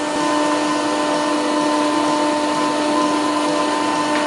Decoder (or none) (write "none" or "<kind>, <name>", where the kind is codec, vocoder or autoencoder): none